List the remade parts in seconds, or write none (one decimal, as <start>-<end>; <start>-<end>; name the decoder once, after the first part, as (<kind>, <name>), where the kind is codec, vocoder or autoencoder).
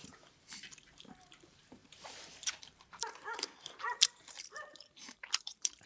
0.0-5.9 (vocoder, BigVGAN v2)